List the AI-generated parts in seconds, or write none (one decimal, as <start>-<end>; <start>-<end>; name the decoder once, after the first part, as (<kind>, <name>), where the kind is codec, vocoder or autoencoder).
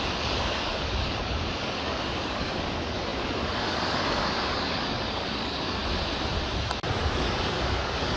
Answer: 0.0-5.8 (codec, DAC); 7.0-8.2